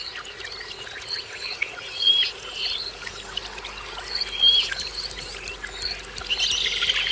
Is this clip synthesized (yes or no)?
no